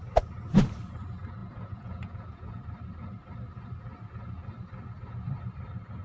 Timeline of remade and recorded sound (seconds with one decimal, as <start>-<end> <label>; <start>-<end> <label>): 0.0-1.4 recorded; 1.4-2.6 remade; 2.6-6.0 recorded